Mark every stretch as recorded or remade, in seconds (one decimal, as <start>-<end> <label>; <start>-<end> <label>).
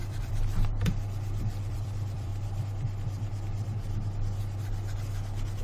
0.0-2.3 remade; 2.3-5.6 recorded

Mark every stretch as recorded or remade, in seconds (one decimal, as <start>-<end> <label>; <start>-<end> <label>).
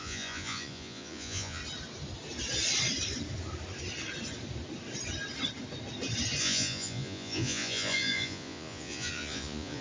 0.0-1.6 remade; 1.6-6.4 recorded; 6.4-9.8 remade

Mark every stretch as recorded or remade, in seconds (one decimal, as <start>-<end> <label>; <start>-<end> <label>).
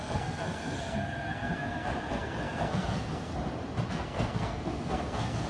0.0-3.3 remade; 3.3-3.9 recorded; 3.9-5.5 remade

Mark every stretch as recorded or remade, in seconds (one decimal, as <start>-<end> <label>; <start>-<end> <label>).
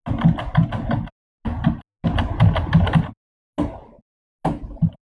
0.0-5.1 recorded